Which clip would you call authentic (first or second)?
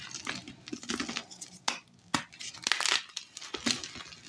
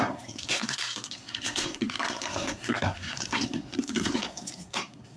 first